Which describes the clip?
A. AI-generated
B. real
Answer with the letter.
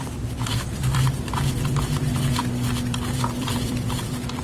A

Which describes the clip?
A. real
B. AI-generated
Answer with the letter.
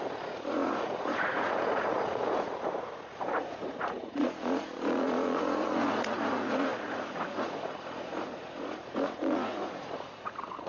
B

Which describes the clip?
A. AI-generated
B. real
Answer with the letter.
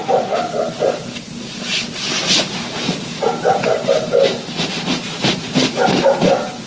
B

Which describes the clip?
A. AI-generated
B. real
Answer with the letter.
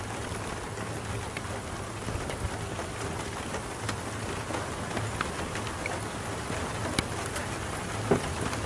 B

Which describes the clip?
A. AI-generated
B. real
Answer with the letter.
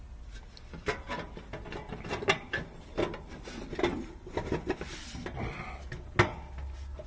B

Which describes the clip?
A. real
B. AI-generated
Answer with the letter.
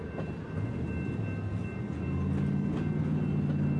A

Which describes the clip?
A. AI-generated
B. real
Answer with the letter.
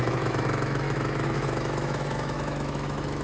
A